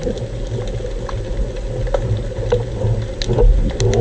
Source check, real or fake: real